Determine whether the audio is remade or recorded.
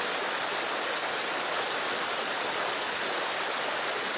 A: recorded